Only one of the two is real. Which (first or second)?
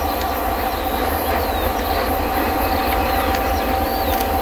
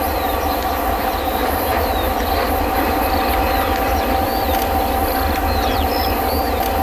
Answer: first